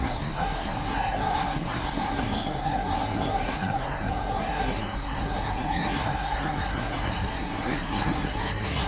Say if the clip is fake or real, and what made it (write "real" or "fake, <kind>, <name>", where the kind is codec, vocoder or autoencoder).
fake, codec, SNAC